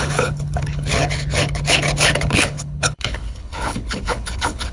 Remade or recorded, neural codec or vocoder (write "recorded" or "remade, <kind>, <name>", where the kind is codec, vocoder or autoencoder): remade, codec, HILCodec